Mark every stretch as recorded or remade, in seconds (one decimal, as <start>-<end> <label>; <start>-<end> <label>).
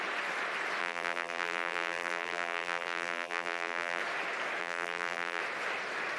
0.0-0.8 recorded; 0.8-4.0 remade; 4.0-4.6 recorded; 4.6-5.4 remade; 5.4-6.2 recorded